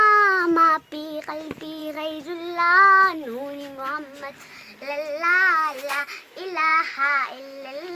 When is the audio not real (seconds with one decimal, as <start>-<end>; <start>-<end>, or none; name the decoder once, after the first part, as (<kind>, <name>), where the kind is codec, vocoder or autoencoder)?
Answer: 6.7-7.9 (vocoder, BigVGAN v2)